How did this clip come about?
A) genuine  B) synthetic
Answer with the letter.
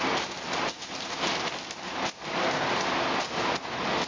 A